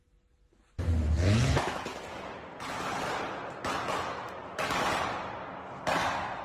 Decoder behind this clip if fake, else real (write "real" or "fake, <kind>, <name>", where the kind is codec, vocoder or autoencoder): real